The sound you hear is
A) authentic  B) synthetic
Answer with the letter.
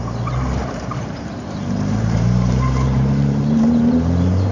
B